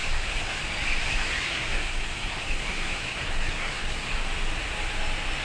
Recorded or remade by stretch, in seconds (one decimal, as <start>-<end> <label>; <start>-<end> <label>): 0.0-0.6 remade; 0.6-1.0 recorded; 1.0-4.2 remade; 4.2-5.4 recorded